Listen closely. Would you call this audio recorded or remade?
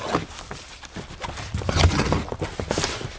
recorded